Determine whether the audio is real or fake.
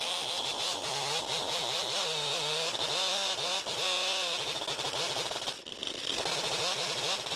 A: real